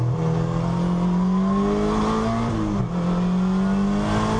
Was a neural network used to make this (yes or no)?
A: no